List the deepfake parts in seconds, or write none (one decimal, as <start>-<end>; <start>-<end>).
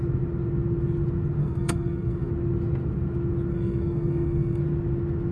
1.4-2.3; 3.5-4.6